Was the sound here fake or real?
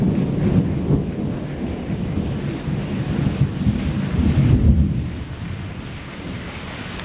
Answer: real